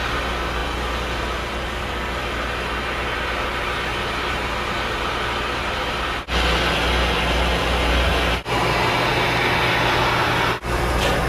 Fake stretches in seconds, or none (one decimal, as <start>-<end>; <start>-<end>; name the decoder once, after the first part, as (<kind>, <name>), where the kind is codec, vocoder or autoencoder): none